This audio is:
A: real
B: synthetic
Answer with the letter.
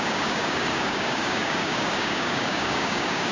B